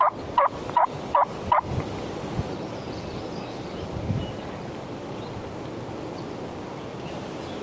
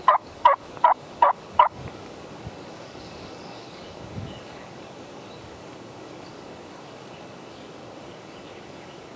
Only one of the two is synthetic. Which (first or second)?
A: second